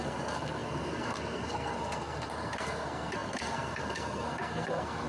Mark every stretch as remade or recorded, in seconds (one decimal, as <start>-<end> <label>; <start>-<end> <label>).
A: 0.0-5.1 remade